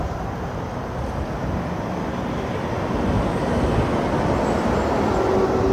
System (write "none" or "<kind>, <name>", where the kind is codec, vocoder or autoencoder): none